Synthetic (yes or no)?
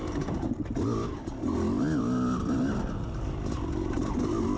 no